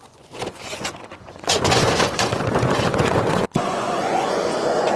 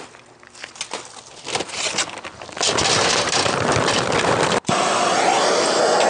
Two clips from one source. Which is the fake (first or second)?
first